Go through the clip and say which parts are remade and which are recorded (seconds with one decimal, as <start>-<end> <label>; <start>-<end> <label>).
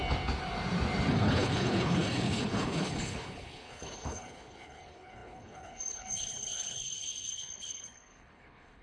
0.0-1.1 recorded; 1.1-8.8 remade